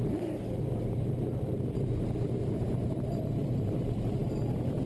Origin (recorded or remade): remade